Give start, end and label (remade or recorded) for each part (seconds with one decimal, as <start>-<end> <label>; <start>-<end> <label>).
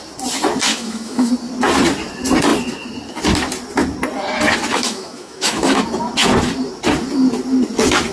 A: 0.0-0.7 recorded; 0.7-1.3 remade; 1.3-4.7 recorded; 4.7-5.8 remade; 5.8-8.1 recorded